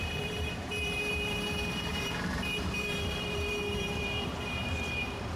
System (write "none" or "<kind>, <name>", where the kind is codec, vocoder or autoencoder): vocoder, BigVGAN v2